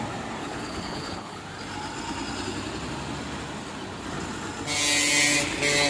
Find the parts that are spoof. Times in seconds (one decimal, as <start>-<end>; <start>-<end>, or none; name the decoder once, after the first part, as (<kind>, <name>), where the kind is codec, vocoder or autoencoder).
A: 0.4-1.4 (codec, HILCodec)